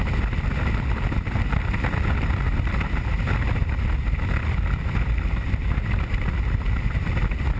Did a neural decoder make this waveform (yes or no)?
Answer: yes